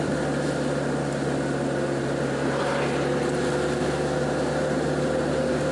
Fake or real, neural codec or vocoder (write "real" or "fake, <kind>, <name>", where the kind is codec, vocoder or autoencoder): real